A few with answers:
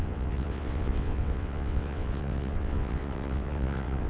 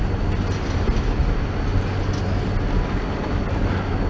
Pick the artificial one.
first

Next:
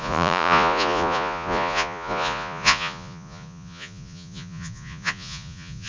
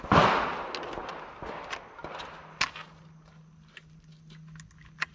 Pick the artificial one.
first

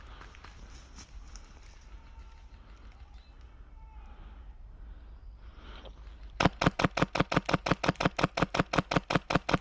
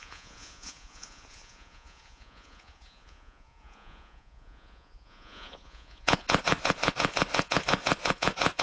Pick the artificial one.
second